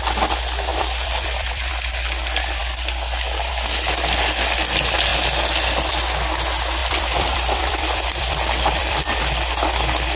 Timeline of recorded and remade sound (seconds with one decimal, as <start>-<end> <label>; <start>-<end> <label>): 0.0-0.7 recorded; 0.7-1.7 remade; 1.7-6.8 recorded; 6.8-9.2 remade; 9.2-10.2 recorded